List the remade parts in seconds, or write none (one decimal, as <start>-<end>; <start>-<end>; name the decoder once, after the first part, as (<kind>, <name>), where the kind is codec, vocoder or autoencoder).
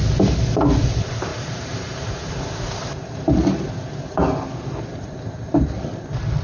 1.3-2.3 (vocoder, BigVGAN v2)